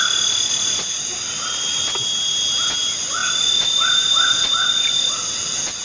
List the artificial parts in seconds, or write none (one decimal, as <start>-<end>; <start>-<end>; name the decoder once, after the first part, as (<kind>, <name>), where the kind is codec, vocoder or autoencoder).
none